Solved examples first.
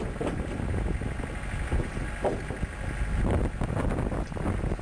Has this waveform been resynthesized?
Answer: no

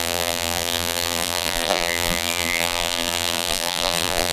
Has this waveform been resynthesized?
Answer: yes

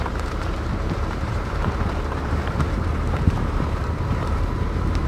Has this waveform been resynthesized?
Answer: yes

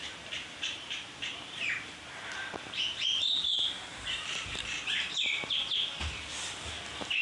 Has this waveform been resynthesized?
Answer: yes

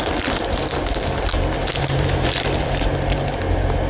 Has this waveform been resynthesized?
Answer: yes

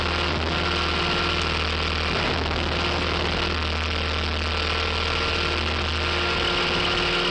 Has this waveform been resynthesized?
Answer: no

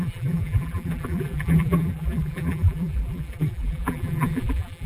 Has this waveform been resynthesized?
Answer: yes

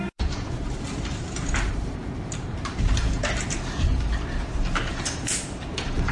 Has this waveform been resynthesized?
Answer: yes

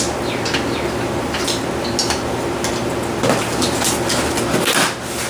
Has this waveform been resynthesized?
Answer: no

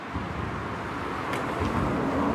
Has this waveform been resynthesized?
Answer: no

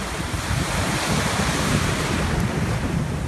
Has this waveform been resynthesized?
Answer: yes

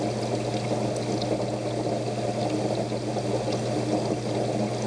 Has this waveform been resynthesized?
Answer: no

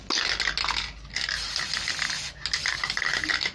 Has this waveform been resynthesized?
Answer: no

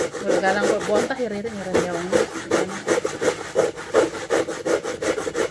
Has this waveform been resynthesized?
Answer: no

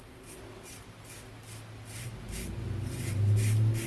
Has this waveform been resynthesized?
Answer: yes